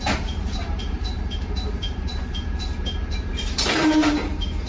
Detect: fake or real fake